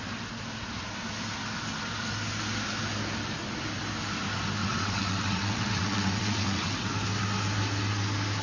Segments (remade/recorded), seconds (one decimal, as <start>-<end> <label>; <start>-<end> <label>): 0.0-4.6 recorded; 4.6-6.9 remade; 6.9-8.4 recorded